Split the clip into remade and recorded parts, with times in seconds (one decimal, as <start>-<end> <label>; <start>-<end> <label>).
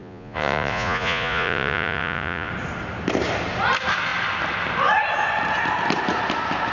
0.0-2.5 remade; 2.5-6.7 recorded